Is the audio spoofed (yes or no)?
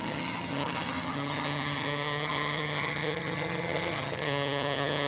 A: yes